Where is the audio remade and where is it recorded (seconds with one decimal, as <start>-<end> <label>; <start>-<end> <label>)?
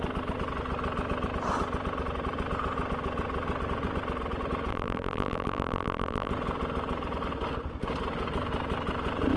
0.0-4.7 recorded; 4.7-6.3 remade; 6.3-9.4 recorded